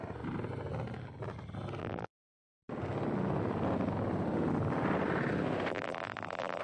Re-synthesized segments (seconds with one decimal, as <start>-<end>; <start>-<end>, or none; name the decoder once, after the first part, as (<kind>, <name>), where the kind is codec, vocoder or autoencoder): 1.8-2.6 (vocoder, BigVGAN v2); 5.7-6.6